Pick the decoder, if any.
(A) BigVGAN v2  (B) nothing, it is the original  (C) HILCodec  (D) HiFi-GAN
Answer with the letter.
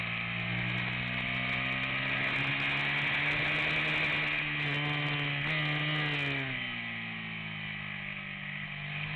B